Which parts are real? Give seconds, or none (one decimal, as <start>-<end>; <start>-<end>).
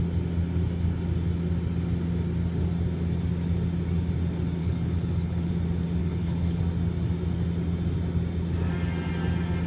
0.0-4.6; 5.5-6.0; 6.6-9.7